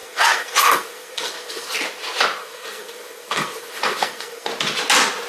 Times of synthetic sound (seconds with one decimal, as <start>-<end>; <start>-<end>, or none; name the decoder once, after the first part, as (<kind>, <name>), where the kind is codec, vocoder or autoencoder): 0.0-1.7 (codec, SNAC); 2.4-4.5

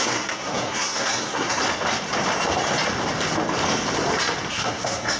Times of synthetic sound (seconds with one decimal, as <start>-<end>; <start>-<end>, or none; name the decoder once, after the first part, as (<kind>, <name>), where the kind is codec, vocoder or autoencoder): 0.0-1.6 (codec, SNAC); 4.5-5.2

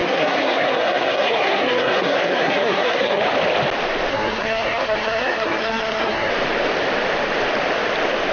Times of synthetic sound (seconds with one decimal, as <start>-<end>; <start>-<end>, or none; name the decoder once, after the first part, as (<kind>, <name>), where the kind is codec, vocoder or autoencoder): 0.0-3.2 (codec, SNAC); 4.1-6.3

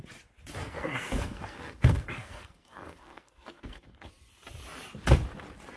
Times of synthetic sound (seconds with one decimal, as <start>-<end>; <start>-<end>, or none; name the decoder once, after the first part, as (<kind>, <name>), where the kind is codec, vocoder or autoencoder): 0.6-4.1 (codec, SNAC)